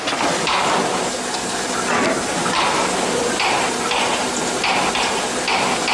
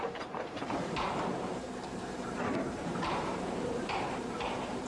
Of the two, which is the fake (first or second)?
second